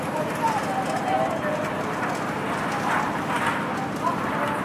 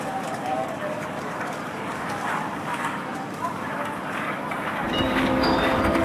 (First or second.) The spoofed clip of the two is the second